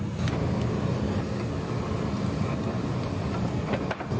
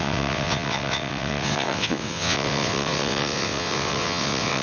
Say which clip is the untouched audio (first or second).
first